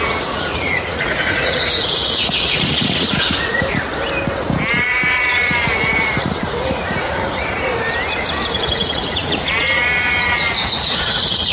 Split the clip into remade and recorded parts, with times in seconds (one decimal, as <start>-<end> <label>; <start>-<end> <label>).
0.0-3.9 remade; 3.9-4.7 recorded; 4.7-7.7 remade; 7.7-8.5 recorded; 8.5-11.5 remade